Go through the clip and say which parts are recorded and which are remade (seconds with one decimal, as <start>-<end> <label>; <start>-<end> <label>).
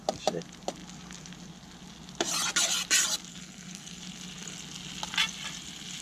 0.0-3.3 recorded; 3.3-4.0 remade; 4.0-6.0 recorded